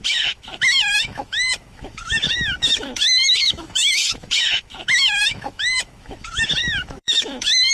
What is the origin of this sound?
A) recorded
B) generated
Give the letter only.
B